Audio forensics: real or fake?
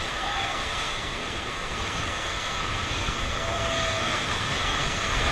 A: fake